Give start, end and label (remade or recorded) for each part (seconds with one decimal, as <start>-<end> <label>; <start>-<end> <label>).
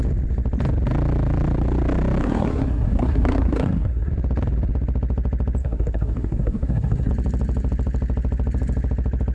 0.0-2.2 recorded; 2.2-4.1 remade; 4.1-5.6 recorded; 5.6-7.1 remade; 7.1-9.3 recorded